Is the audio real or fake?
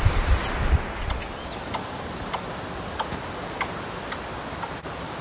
real